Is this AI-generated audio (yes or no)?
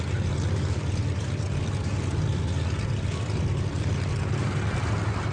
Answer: yes